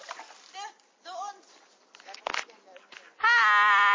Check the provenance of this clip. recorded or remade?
recorded